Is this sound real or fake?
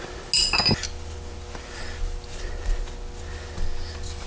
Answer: real